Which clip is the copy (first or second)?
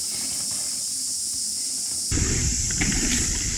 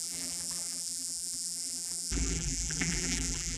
second